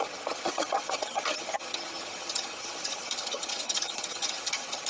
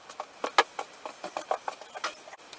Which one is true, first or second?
second